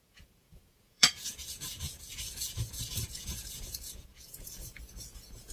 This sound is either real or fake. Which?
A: fake